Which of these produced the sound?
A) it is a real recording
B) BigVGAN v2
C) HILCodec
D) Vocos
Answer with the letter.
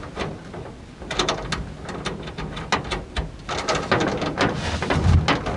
A